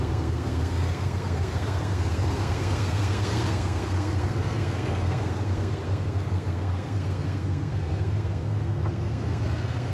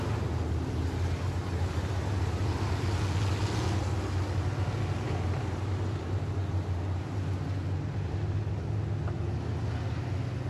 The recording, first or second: second